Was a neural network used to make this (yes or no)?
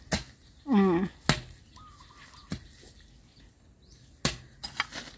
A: no